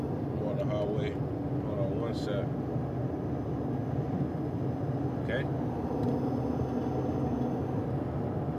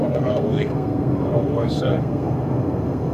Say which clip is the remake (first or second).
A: second